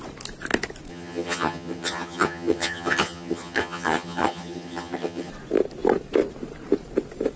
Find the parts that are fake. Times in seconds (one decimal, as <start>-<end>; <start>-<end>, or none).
0.9-5.3

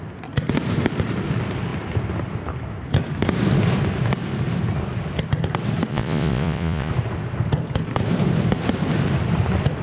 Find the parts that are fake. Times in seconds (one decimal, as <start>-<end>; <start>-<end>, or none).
5.9-6.9

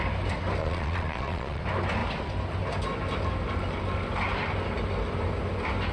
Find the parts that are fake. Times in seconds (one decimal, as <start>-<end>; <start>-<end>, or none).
0.6-1.6

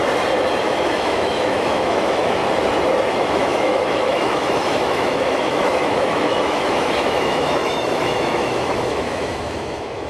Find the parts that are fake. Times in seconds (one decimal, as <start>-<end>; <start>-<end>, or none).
0.6-2.4; 3.1-10.1

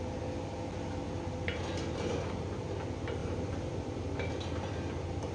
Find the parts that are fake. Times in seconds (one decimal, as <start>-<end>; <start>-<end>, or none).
none

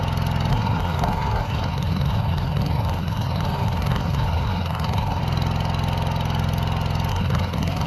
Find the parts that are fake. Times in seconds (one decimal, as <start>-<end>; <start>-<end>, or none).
0.5-5.2; 7.1-7.9

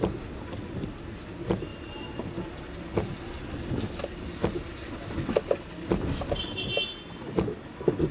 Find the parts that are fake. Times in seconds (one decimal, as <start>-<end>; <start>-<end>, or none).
none

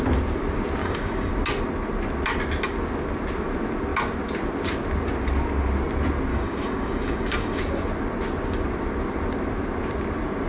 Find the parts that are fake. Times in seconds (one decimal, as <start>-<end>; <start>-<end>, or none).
0.8-1.3; 6.3-7.6